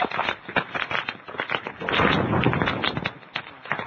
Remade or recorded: recorded